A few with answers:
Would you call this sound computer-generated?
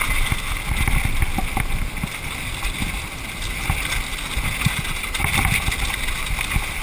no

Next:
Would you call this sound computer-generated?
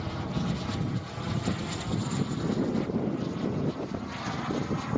no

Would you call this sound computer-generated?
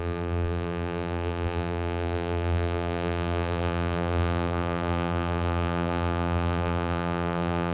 yes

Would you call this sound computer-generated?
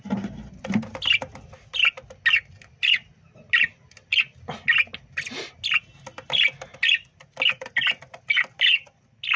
no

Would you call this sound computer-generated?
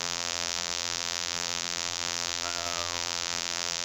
yes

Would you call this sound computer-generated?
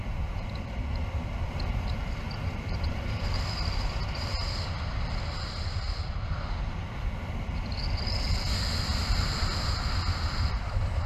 yes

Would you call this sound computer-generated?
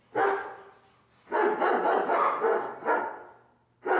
no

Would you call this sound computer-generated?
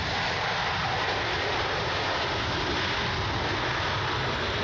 no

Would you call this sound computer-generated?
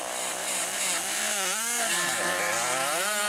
yes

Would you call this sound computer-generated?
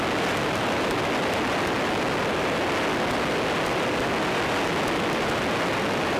no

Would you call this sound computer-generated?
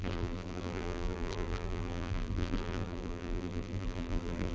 yes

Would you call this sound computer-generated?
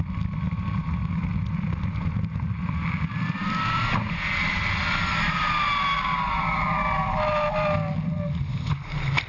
no